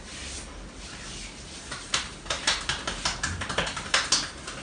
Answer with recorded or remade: recorded